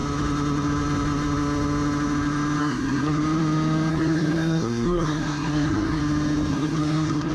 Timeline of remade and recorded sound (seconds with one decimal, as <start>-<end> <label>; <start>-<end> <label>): 0.0-2.6 recorded; 2.6-3.2 remade; 3.2-3.9 recorded; 3.9-6.0 remade; 6.0-6.5 recorded; 6.5-7.3 remade